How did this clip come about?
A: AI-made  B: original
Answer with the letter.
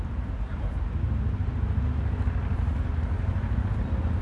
B